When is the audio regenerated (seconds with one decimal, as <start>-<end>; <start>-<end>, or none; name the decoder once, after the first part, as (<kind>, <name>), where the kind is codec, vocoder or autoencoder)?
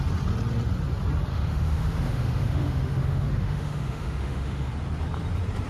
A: 1.3-4.7 (autoencoder, DAC-VAE)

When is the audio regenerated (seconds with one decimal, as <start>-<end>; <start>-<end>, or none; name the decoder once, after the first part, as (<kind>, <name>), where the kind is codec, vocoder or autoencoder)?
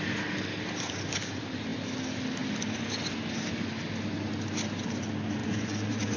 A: 5.4-6.2 (vocoder, Vocos)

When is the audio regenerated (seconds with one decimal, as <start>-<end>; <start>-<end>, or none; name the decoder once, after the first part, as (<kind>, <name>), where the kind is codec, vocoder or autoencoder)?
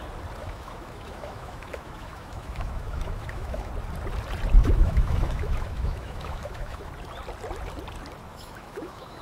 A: 0.4-3.7 (autoencoder, DAC-VAE); 4.6-6.9; 8.3-9.2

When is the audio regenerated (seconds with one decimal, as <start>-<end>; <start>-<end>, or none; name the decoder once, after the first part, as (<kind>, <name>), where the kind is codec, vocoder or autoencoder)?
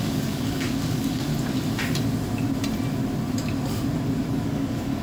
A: 0.0-1.3 (codec, DAC); 4.3-5.0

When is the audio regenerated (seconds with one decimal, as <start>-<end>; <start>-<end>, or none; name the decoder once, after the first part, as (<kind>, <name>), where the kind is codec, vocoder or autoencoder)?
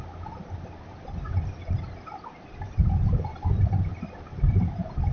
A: 1.6-5.1 (vocoder, BigVGAN v2)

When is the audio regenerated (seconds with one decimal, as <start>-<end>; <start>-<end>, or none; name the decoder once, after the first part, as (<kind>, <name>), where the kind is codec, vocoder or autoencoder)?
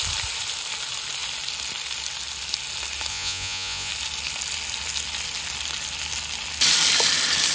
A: 3.1-3.9 (vocoder, Vocos)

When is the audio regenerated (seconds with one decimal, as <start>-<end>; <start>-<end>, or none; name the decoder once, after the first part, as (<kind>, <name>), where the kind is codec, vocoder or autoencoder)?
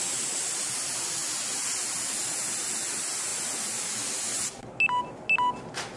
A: none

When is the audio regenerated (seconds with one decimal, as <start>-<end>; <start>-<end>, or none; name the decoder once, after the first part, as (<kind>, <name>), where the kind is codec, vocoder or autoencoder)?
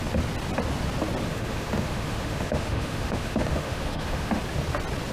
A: 1.3-4.4 (autoencoder, DAC-VAE)